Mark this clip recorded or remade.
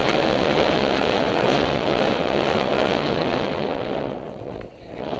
remade